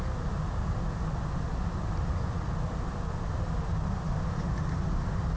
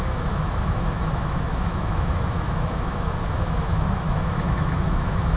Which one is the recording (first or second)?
first